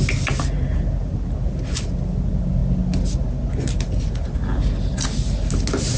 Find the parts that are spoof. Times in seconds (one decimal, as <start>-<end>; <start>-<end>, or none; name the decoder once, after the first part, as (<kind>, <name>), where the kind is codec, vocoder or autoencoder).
none